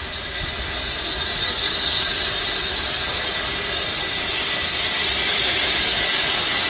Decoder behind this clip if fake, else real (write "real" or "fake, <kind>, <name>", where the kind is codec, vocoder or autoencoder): real